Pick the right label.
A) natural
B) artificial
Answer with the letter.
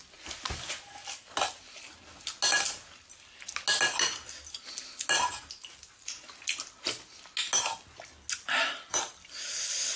A